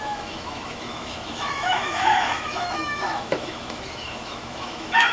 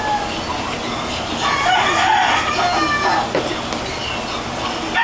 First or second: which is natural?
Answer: second